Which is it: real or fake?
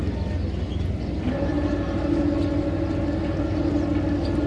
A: real